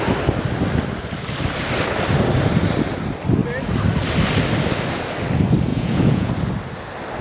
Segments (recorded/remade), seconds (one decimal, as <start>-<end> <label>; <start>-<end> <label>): 0.0-5.7 recorded; 5.7-6.3 remade; 6.3-7.2 recorded